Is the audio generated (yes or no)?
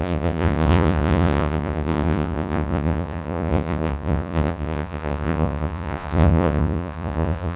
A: yes